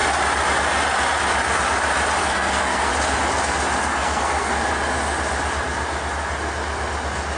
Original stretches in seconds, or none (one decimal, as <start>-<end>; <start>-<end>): 0.0-2.2; 2.9-3.8; 4.5-7.4